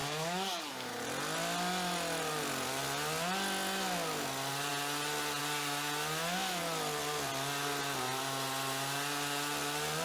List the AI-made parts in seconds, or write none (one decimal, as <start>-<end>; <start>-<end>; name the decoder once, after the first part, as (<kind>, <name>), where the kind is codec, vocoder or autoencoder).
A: 0.0-0.7 (codec, DAC)